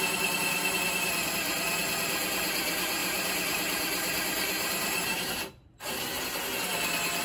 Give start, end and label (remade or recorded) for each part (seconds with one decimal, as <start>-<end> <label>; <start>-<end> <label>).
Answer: 0.0-3.0 recorded; 3.0-5.9 remade; 5.9-7.2 recorded

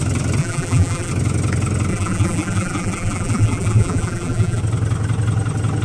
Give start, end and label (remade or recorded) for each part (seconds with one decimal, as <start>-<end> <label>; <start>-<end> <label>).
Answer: 0.0-0.4 recorded; 0.4-1.1 remade; 1.1-1.9 recorded; 1.9-4.6 remade; 4.6-5.8 recorded

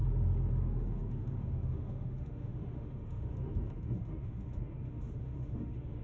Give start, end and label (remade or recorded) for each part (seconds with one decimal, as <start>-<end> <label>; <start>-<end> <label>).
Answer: 0.0-0.6 recorded; 0.6-6.0 remade

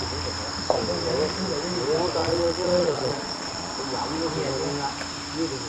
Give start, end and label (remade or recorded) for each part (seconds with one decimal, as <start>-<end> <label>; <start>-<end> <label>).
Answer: 0.0-2.2 recorded; 2.2-3.8 remade; 3.8-5.7 recorded

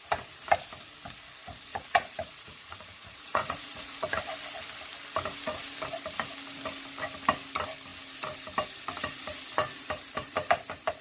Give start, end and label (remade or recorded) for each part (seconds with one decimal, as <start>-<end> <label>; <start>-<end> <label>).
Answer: 0.0-1.7 recorded; 1.7-4.2 remade; 4.2-11.0 recorded